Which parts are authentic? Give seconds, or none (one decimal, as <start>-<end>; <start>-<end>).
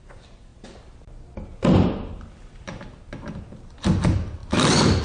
0.0-5.0